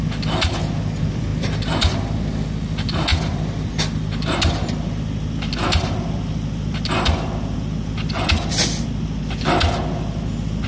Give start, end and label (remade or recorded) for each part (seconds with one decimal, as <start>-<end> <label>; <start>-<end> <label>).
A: 0.0-10.7 recorded